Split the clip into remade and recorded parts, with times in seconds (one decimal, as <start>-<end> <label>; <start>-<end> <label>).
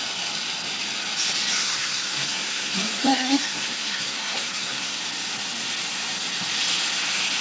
0.0-1.6 recorded; 1.6-5.0 remade; 5.0-7.4 recorded